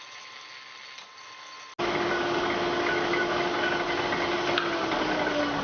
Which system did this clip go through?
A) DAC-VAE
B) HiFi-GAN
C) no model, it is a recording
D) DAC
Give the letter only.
C